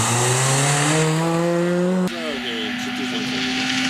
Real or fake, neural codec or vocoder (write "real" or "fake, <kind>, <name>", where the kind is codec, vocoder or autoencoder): real